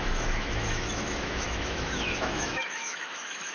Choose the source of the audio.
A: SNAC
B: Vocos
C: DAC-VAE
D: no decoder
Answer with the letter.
C